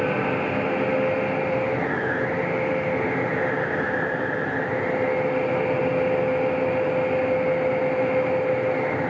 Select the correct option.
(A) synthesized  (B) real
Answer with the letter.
B